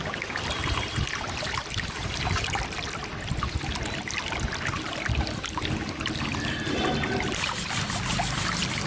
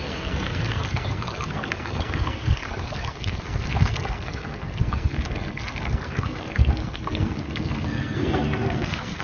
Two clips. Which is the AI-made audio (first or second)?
second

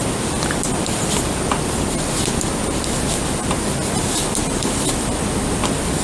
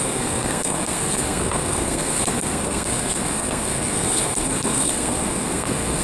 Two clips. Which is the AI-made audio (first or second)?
second